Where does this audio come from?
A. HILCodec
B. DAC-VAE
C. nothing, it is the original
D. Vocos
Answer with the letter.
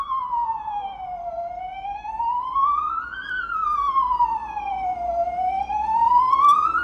C